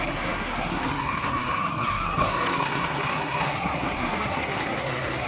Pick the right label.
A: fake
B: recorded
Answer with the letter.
A